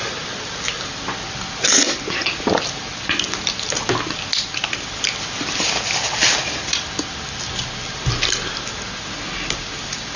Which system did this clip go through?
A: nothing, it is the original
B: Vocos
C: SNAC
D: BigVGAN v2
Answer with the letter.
A